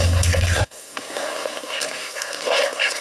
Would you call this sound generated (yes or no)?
yes